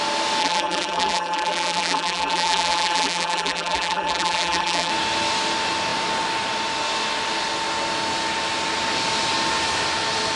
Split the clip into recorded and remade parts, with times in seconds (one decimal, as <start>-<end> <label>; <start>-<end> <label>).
0.0-0.4 recorded; 0.4-4.9 remade; 4.9-10.4 recorded